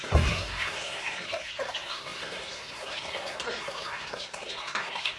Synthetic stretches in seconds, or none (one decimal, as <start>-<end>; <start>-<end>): 0.0-5.2